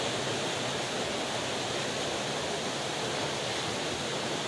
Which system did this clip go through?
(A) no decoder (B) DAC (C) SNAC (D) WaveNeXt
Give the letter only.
A